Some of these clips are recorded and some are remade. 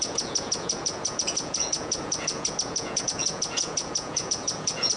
remade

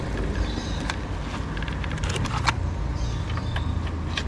recorded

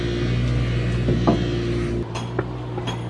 recorded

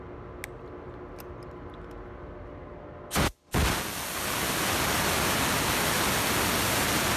recorded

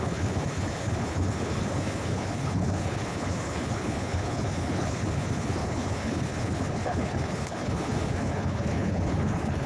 remade